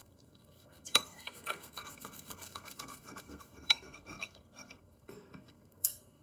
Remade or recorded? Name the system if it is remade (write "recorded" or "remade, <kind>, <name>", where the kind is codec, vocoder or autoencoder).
remade, codec, SNAC